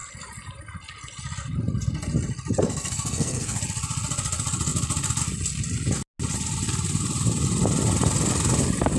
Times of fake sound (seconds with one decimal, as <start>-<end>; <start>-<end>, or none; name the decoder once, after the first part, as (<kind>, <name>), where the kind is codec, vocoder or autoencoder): 2.6-3.6 (codec, SNAC)